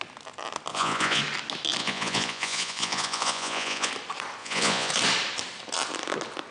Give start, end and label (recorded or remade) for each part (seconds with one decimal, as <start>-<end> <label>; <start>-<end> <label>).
0.0-0.7 recorded; 0.7-1.2 remade; 1.2-1.8 recorded; 1.8-3.9 remade; 3.9-4.4 recorded; 4.4-4.9 remade; 4.9-6.5 recorded